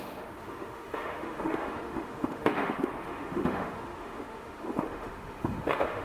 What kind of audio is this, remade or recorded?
remade